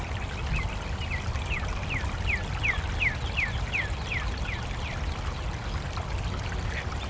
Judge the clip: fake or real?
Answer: real